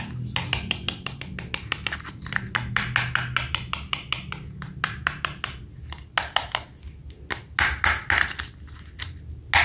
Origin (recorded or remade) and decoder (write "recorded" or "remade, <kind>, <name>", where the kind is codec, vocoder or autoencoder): recorded